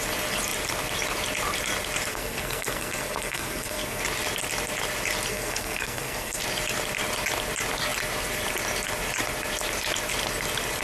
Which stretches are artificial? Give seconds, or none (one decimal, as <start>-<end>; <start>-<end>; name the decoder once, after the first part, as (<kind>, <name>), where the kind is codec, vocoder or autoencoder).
2.1-4.0 (codec, SNAC); 5.3-6.4